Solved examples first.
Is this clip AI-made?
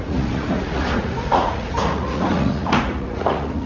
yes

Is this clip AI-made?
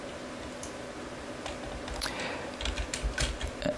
no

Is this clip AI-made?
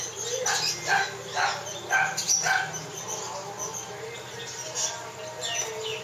no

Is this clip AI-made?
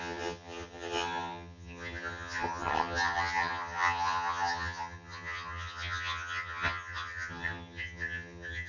yes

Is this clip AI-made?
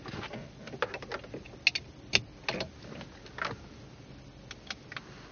no